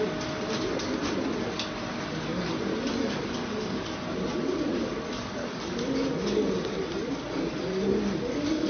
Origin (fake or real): real